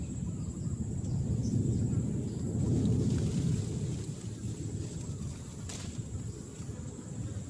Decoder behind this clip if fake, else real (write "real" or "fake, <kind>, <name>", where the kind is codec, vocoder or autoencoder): real